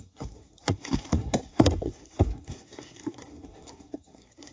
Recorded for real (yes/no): no